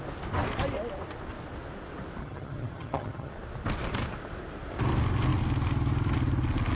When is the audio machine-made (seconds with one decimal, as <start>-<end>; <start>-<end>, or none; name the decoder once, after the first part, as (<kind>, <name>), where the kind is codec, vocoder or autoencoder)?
2.2-3.3 (vocoder, HiFi-GAN)